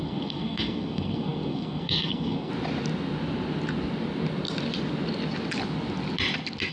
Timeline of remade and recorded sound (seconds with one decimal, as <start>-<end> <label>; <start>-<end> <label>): 0.0-2.5 remade; 2.5-6.7 recorded